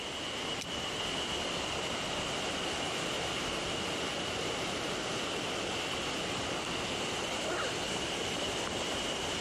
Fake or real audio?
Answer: real